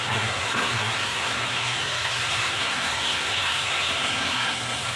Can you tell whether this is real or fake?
fake